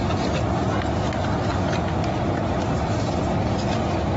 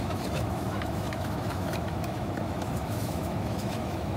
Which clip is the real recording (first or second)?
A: first